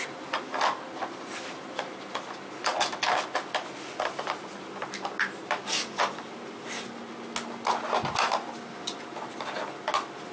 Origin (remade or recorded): recorded